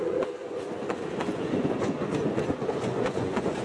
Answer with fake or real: fake